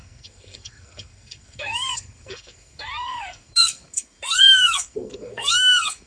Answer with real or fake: fake